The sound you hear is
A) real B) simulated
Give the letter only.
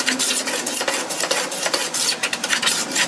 A